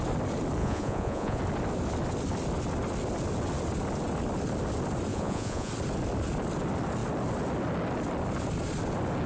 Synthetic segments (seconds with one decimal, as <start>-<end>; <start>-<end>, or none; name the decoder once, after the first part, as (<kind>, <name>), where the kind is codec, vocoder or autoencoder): 0.6-1.4 (vocoder, Vocos); 5.1-5.7